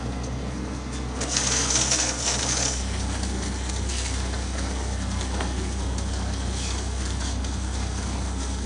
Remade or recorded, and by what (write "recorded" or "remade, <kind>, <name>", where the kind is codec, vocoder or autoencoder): remade, codec, SNAC